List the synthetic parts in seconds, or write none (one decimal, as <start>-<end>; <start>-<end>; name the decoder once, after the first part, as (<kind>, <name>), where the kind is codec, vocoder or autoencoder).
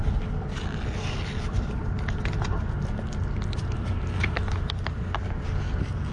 none